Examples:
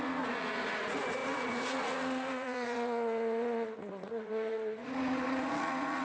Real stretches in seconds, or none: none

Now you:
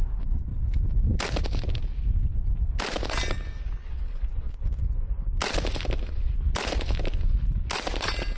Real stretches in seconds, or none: 0.0-3.8; 4.9-8.4